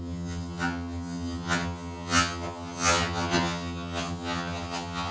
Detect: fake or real fake